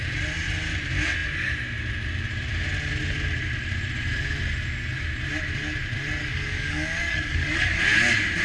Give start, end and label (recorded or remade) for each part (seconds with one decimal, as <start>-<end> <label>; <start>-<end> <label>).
0.0-6.2 recorded; 6.2-7.8 remade; 7.8-8.4 recorded